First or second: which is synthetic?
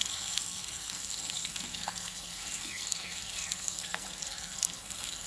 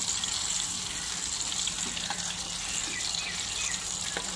first